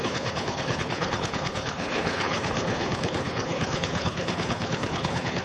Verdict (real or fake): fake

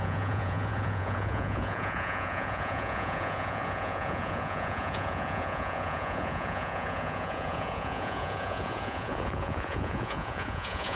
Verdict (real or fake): fake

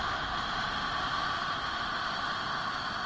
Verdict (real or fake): real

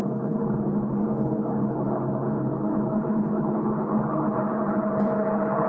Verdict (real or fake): fake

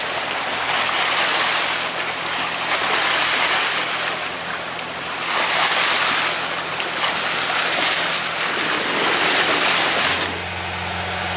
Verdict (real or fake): real